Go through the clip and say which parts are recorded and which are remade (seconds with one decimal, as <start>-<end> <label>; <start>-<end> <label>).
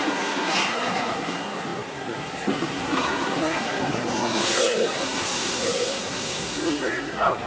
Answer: 0.0-7.5 remade